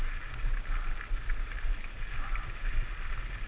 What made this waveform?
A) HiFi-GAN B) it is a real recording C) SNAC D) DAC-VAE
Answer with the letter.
B